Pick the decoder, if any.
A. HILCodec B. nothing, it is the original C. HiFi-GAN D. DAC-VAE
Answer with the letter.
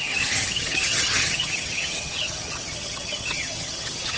C